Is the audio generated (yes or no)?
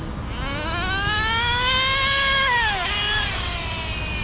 no